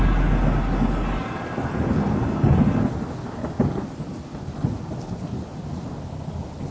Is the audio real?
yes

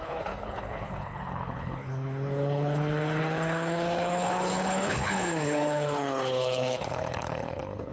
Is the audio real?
no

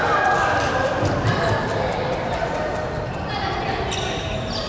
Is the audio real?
yes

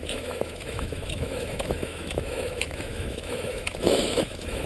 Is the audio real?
no